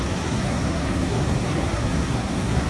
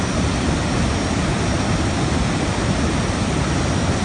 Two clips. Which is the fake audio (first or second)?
first